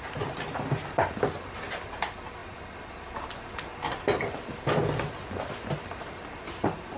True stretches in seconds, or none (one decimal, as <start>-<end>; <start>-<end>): 0.0-7.0